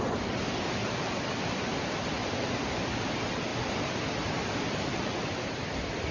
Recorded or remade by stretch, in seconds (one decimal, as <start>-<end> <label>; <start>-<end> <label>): 0.0-2.2 recorded; 2.2-3.1 remade; 3.1-6.1 recorded